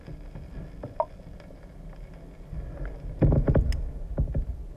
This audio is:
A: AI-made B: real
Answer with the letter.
B